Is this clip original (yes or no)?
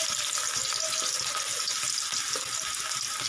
yes